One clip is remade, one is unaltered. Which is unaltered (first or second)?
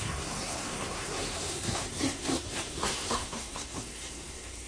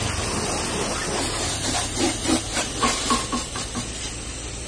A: second